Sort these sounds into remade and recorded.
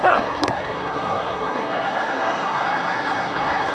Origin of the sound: remade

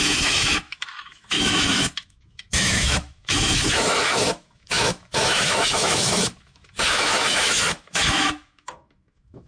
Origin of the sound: remade